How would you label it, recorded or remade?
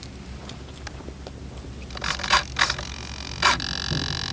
recorded